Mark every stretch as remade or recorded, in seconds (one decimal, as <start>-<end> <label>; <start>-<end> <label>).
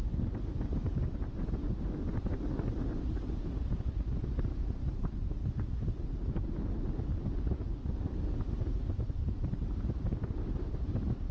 0.0-11.3 recorded